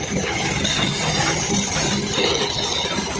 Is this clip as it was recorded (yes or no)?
yes